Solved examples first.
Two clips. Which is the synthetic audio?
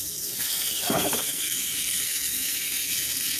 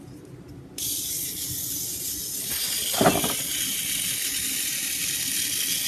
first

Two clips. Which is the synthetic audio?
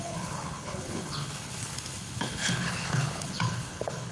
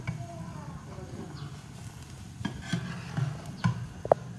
first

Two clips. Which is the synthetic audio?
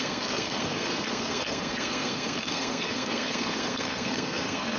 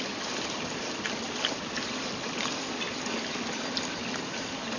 first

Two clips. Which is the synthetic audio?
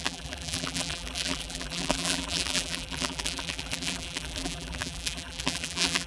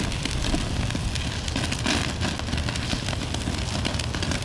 first